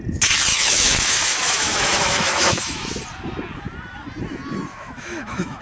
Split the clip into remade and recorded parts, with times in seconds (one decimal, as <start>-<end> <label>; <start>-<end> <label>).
0.0-0.5 recorded; 0.5-2.9 remade; 2.9-4.7 recorded; 4.7-5.6 remade